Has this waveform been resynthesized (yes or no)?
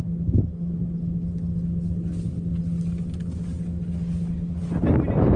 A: no